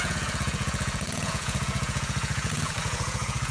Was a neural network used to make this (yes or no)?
yes